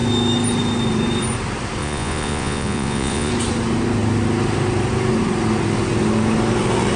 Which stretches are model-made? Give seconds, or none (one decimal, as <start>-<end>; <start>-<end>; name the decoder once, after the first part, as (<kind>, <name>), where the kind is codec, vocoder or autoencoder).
1.8-3.3 (vocoder, Vocos)

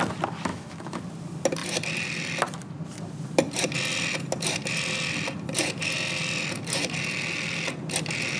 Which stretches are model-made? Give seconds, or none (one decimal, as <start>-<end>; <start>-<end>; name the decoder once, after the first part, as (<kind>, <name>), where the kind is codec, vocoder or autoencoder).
0.5-1.0 (autoencoder, DAC-VAE)

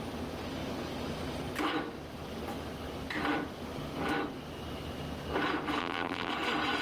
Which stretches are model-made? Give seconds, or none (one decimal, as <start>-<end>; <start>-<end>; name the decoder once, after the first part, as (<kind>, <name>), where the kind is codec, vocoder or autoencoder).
5.8-6.3 (vocoder, BigVGAN v2)

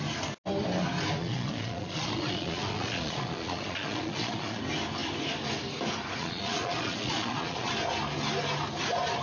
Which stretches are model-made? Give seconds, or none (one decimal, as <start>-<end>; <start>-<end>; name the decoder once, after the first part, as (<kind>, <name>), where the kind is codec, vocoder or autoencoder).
1.2-4.6 (vocoder, Vocos); 6.2-7.7

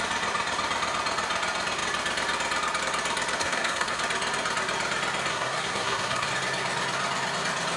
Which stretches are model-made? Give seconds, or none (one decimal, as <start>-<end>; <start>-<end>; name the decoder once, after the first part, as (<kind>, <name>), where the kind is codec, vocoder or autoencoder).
3.4-4.0 (codec, SNAC); 5.3-6.3

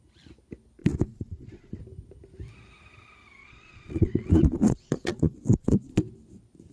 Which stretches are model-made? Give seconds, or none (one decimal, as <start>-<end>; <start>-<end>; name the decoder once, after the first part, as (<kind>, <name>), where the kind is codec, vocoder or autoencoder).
0.8-1.8 (vocoder, Vocos); 3.4-5.9

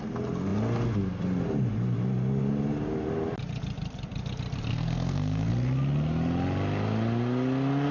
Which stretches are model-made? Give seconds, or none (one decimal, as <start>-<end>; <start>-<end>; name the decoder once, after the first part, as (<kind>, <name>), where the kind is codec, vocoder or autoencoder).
4.7-5.5 (codec, SNAC)

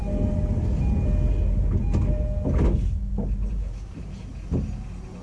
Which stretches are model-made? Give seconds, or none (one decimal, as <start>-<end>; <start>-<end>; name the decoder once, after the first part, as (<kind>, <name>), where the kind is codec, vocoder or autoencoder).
3.5-4.3 (vocoder, BigVGAN v2)